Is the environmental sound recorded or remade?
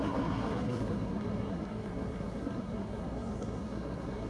remade